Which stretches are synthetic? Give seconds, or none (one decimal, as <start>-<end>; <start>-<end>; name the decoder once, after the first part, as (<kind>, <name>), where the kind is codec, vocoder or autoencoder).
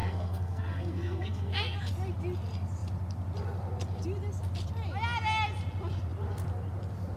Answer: 0.0-1.9 (codec, SNAC)